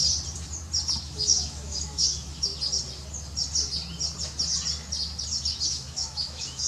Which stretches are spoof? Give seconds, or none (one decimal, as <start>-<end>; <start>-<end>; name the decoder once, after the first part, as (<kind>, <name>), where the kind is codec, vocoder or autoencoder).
1.0-2.5 (autoencoder, DAC-VAE); 5.7-6.7